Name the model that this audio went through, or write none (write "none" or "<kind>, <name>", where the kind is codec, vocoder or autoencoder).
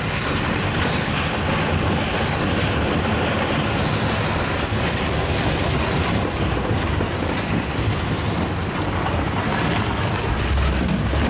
none